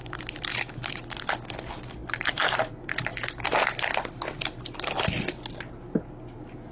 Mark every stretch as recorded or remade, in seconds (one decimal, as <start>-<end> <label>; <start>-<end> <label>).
0.0-6.7 recorded